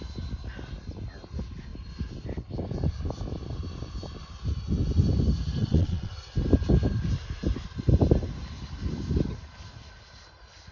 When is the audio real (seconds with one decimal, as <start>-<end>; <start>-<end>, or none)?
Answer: 0.0-5.6; 6.1-10.7